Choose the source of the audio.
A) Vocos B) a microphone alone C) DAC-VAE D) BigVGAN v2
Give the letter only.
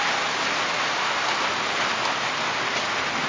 B